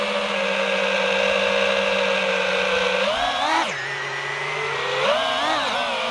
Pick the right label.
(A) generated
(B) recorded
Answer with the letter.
B